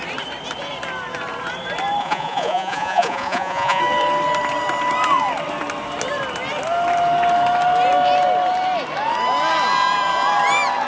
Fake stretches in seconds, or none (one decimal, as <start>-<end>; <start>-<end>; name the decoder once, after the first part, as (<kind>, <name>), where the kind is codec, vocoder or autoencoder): 2.0-3.8 (vocoder, Vocos)